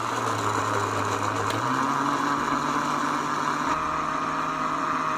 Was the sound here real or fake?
real